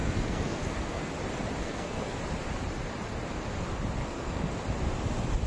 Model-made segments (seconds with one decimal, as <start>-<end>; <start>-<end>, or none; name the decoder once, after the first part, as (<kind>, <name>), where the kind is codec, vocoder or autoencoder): 0.0-1.1 (codec, SNAC); 1.6-2.2; 4.0-4.5